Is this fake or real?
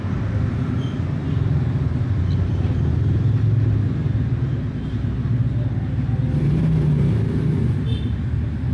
real